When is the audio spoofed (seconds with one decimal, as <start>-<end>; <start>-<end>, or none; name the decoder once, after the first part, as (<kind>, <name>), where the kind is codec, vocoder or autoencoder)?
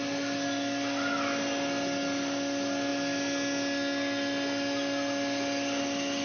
none